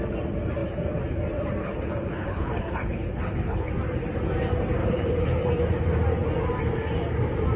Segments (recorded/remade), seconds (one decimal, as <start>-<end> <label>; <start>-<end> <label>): 0.0-1.6 recorded; 1.6-3.7 remade; 3.7-4.8 recorded; 4.8-5.5 remade; 5.5-7.6 recorded